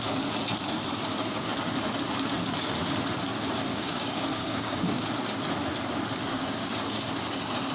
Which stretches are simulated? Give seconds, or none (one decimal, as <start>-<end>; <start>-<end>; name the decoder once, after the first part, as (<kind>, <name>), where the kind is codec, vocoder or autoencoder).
3.7-5.1 (codec, DAC); 6.3-7.0